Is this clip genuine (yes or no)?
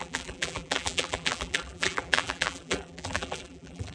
no